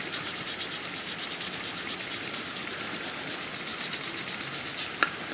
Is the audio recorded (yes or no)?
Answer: yes